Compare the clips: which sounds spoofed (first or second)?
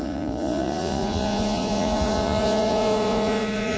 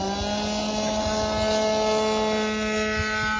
first